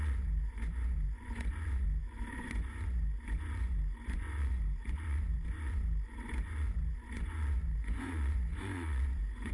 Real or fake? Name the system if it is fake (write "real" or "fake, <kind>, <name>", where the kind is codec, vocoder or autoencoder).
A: fake, vocoder, Vocos